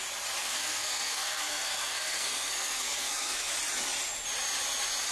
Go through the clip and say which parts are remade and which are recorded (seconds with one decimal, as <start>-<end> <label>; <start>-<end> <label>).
0.0-0.4 recorded; 0.4-3.5 remade; 3.5-5.1 recorded